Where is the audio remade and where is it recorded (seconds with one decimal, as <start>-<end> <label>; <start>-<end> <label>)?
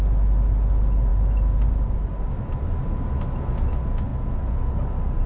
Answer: 0.0-4.1 recorded; 4.1-4.6 remade; 4.6-5.3 recorded